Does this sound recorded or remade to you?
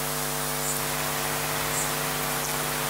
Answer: recorded